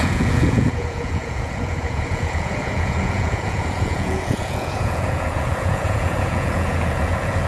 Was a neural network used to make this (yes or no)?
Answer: yes